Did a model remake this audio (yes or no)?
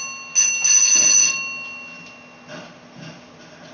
no